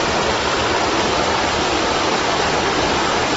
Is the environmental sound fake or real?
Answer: real